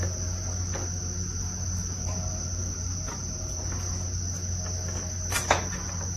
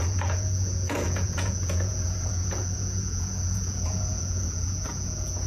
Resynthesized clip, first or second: second